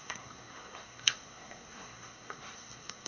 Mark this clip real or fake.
fake